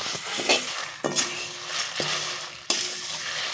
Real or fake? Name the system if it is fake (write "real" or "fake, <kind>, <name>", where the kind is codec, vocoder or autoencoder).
real